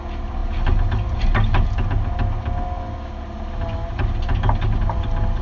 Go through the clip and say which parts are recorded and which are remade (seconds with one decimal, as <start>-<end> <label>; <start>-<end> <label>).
0.0-5.4 recorded